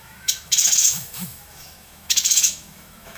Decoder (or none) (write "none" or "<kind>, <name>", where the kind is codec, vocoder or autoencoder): autoencoder, DAC-VAE